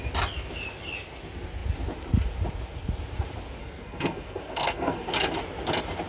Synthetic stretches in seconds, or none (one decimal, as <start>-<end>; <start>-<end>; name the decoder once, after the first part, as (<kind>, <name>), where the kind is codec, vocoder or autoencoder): 3.6-5.1 (codec, SNAC)